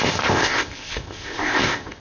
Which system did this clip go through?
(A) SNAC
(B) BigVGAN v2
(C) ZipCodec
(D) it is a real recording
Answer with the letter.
C